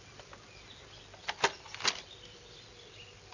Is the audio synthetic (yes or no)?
no